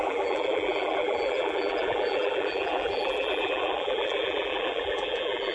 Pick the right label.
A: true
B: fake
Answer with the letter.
B